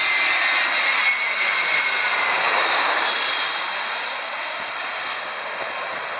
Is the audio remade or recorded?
recorded